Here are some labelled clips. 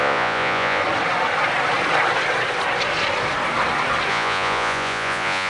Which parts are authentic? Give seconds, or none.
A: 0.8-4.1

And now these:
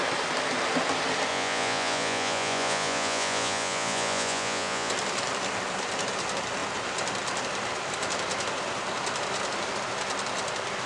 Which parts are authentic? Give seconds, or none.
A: 0.0-1.3; 4.9-10.9